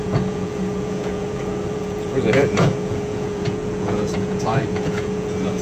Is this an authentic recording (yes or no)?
no